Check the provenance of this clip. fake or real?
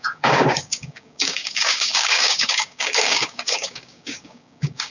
fake